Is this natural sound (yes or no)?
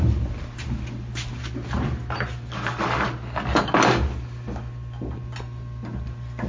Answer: yes